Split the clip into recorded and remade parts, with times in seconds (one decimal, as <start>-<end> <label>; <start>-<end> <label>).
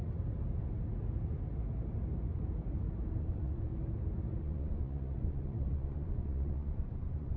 0.0-3.2 recorded; 3.2-3.7 remade; 3.7-4.4 recorded; 4.4-7.4 remade